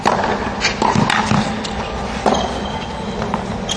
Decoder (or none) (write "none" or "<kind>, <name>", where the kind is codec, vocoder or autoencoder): none